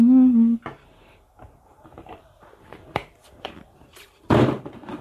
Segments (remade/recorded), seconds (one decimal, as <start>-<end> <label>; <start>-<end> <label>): 0.0-1.7 recorded; 1.7-5.0 remade